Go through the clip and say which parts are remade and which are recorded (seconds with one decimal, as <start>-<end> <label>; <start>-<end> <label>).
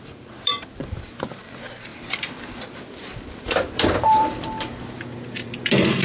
0.0-6.0 remade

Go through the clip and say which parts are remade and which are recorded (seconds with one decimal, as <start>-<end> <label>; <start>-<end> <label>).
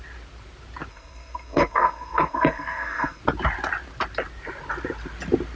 0.0-0.9 recorded; 0.9-3.2 remade; 3.2-5.6 recorded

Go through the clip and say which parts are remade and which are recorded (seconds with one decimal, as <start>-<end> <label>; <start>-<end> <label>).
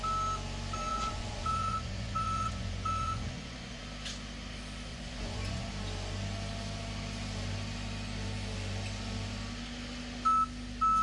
0.0-0.9 recorded; 0.9-3.8 remade; 3.8-4.9 recorded; 4.9-5.7 remade; 5.7-11.0 recorded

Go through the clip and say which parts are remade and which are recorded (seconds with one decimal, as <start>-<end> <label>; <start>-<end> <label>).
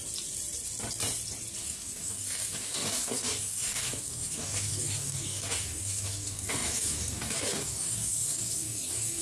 0.0-1.6 recorded; 1.6-9.2 remade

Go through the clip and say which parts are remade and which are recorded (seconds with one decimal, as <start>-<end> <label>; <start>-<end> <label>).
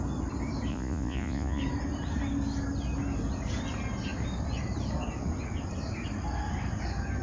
0.0-0.7 recorded; 0.7-1.6 remade; 1.6-7.2 recorded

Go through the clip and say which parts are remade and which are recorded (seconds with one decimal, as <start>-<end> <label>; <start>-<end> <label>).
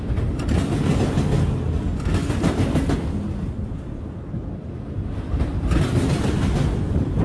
0.0-7.2 recorded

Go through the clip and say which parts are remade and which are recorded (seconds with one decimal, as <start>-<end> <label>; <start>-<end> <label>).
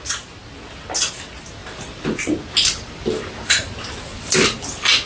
0.0-5.1 recorded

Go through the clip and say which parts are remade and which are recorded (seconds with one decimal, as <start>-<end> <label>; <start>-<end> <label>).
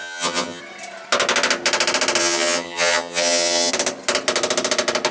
0.0-0.6 remade; 0.6-2.2 recorded; 2.2-3.7 remade; 3.7-5.1 recorded